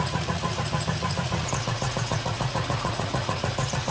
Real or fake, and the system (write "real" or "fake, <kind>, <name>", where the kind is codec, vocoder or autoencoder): fake, vocoder, Vocos